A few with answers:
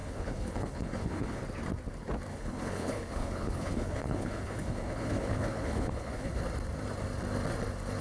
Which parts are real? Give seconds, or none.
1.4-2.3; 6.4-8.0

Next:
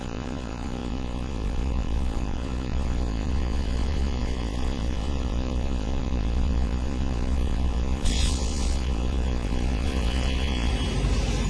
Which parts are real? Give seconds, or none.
10.7-11.5